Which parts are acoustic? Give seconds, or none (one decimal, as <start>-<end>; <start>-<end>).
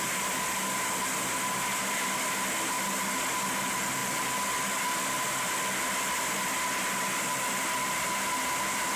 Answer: 0.0-9.0